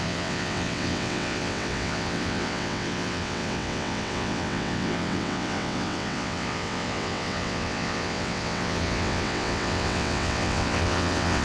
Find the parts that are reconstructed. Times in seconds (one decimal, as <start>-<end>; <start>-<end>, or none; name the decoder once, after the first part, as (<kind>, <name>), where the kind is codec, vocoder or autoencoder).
0.0-11.4 (vocoder, WaveNeXt)

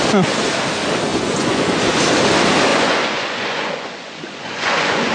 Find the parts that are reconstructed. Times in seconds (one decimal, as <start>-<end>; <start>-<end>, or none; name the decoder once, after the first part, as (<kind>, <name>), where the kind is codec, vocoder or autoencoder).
1.1-2.0 (vocoder, Vocos); 2.7-5.1

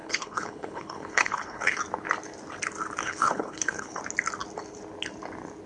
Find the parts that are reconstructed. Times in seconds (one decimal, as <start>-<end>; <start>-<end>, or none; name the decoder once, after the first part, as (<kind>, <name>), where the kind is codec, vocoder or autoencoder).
0.0-1.8 (codec, HILCodec); 3.0-4.0

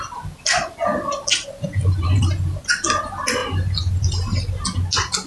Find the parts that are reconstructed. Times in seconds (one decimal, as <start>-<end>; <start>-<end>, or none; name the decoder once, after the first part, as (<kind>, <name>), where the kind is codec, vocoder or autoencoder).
none

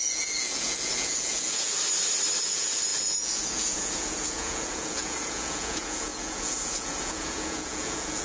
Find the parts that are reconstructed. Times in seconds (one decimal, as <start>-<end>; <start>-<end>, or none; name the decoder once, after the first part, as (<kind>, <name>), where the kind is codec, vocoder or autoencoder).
0.0-1.8 (vocoder, Vocos); 2.4-8.2

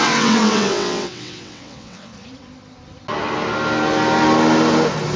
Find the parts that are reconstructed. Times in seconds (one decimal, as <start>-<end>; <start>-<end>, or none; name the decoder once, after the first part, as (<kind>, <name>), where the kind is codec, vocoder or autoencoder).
0.0-2.1 (vocoder, WaveNeXt)

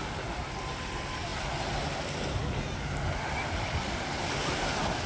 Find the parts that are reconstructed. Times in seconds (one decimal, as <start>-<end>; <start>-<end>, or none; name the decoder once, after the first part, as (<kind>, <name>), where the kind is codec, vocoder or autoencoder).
none